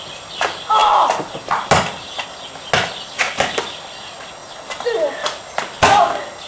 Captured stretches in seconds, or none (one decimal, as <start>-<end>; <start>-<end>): 0.0-0.8; 1.7-4.4; 5.1-6.5